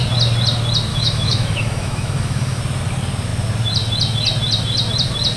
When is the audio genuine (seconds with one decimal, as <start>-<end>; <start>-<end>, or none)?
0.0-0.9; 2.6-5.4